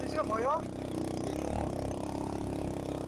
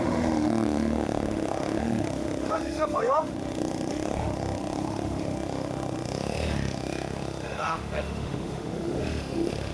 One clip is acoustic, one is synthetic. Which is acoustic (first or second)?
first